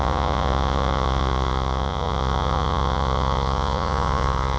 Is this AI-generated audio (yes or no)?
yes